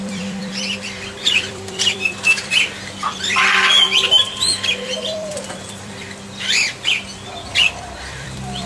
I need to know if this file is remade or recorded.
remade